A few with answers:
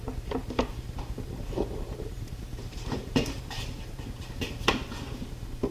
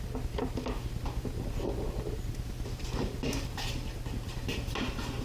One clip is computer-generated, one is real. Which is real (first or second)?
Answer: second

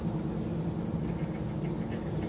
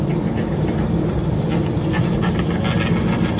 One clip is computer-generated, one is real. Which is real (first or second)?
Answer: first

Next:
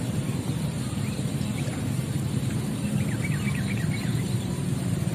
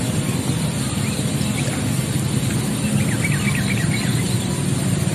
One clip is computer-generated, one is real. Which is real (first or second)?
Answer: second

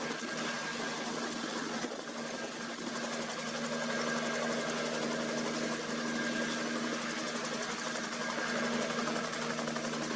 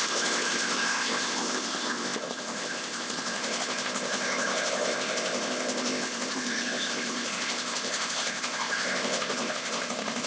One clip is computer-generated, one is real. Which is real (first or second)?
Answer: first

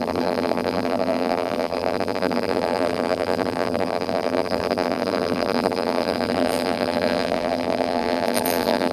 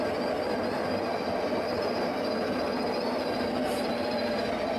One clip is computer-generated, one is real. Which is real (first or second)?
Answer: second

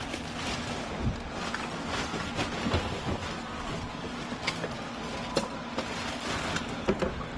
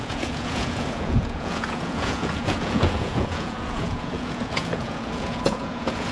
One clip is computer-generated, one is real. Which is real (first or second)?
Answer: first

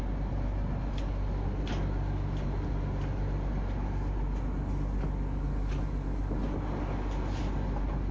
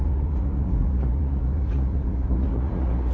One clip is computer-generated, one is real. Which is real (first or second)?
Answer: first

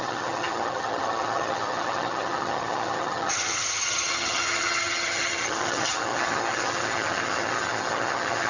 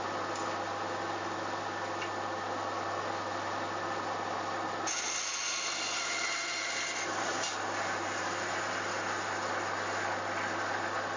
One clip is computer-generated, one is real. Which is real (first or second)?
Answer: second